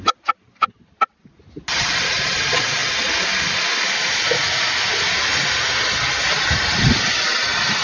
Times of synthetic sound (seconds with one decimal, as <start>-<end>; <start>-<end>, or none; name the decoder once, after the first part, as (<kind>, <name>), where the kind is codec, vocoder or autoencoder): none